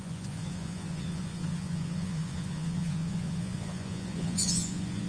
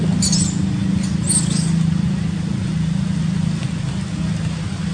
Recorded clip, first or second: second